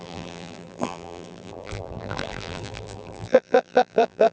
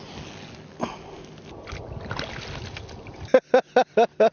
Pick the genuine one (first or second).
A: second